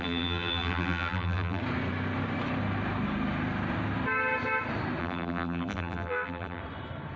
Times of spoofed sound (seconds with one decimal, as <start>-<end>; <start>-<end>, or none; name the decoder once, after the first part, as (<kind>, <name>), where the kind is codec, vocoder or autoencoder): 0.0-1.6 (vocoder, BigVGAN v2); 5.0-6.6

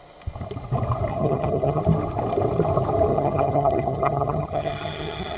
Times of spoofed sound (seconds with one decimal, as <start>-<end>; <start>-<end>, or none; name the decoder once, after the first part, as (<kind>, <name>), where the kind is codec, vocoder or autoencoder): 1.1-1.8 (vocoder, HiFi-GAN); 3.1-5.4

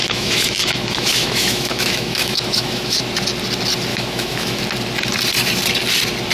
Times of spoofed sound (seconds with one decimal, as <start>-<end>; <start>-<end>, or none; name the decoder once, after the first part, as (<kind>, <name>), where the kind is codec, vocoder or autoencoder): 0.0-3.0 (autoencoder, DAC-VAE); 3.9-4.6

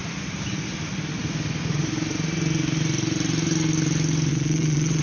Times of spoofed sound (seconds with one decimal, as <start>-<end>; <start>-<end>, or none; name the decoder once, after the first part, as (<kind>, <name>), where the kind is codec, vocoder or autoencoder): 4.3-5.0 (vocoder, WaveNeXt)

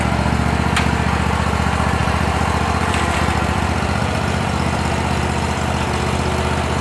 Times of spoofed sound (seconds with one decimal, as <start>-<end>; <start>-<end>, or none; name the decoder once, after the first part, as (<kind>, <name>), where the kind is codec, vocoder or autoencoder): 2.0-5.2 (vocoder, BigVGAN v2)

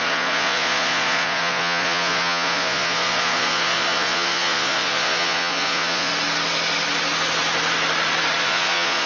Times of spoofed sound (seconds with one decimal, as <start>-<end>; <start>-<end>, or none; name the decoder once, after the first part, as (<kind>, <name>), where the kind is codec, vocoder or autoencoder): 0.0-6.1 (vocoder, Vocos); 8.4-9.1

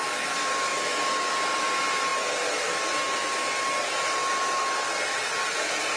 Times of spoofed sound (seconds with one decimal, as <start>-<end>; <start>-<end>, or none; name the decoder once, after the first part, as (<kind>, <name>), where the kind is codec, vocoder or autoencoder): 0.7-1.3 (autoencoder, DAC-VAE)

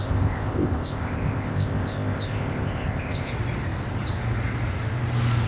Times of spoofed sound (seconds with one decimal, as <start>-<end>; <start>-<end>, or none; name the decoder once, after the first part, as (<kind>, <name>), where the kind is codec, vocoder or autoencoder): 0.0-3.3 (codec, ZipCodec)